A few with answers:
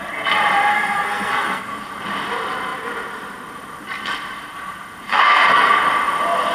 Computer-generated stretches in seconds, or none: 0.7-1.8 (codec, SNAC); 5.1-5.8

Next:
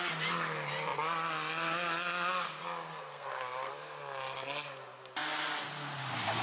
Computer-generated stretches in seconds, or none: 3.0-3.7 (codec, SNAC)

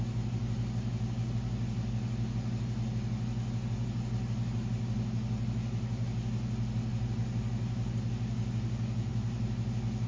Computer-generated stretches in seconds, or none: none

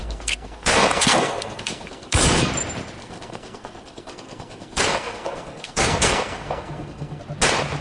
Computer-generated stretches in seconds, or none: 0.0-2.5 (codec, SNAC); 3.0-7.2

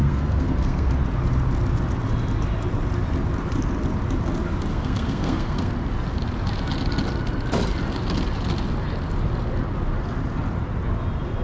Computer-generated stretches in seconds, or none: 0.0-0.9 (codec, SNAC); 4.7-5.7

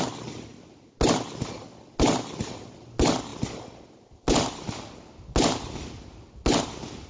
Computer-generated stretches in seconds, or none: none